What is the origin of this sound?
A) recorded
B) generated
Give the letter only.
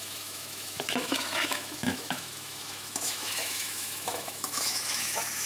B